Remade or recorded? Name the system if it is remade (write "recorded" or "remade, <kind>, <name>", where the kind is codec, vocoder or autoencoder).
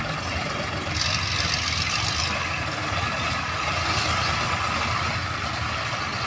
recorded